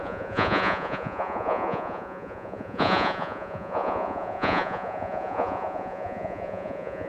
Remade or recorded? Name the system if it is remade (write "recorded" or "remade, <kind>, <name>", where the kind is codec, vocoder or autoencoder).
remade, vocoder, Vocos